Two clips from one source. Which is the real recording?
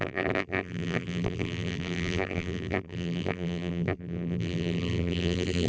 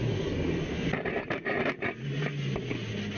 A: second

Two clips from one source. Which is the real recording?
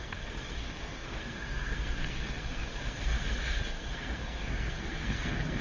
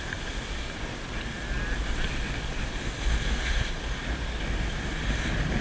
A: second